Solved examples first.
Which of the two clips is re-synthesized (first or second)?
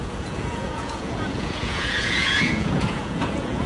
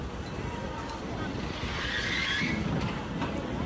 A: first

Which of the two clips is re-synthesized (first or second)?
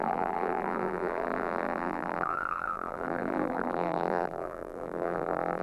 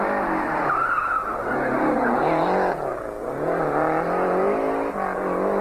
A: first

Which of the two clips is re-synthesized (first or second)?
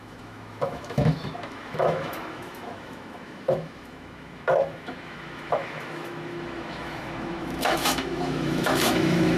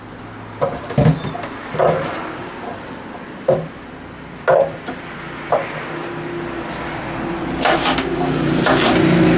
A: first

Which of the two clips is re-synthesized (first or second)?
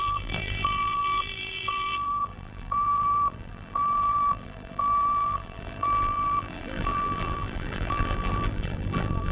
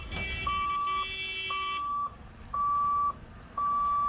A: first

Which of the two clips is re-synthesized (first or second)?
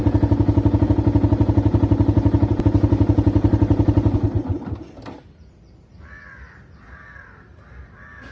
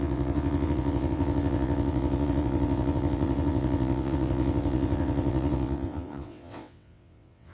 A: second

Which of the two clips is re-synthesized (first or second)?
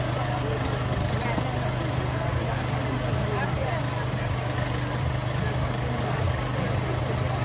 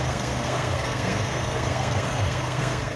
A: second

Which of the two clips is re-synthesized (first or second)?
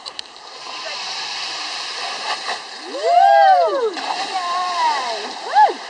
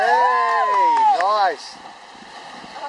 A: first